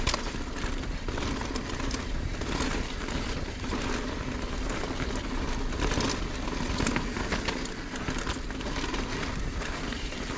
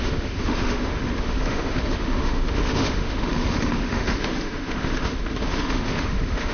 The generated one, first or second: second